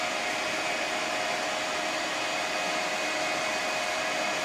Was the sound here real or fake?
fake